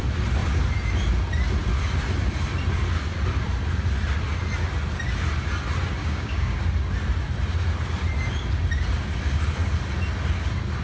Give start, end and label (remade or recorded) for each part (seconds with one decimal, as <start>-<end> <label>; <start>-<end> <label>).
0.0-6.0 recorded; 6.0-6.6 remade; 6.6-10.8 recorded